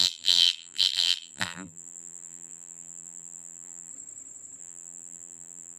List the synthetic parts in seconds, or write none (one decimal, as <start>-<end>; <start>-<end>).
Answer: 0.0-3.9; 4.6-5.8